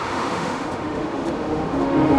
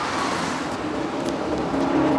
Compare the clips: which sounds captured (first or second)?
second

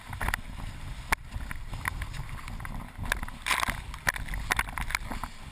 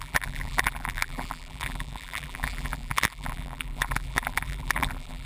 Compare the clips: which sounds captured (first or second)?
first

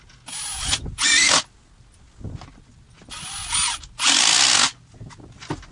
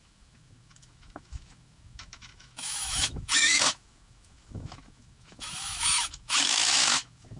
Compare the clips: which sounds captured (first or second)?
first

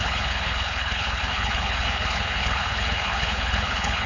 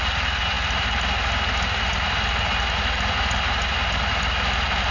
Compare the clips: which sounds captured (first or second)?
second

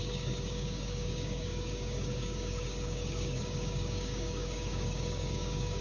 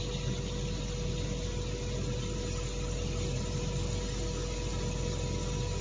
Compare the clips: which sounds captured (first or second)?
second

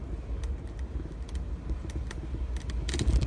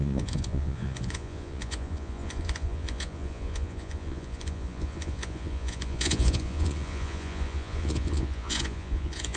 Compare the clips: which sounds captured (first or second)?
first